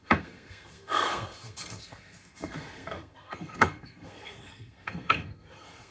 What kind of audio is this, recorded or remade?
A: remade